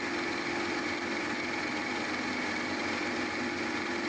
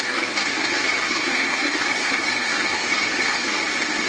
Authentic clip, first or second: first